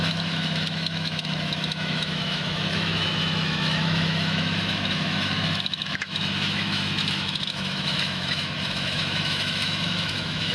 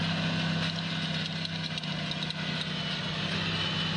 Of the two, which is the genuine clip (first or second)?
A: second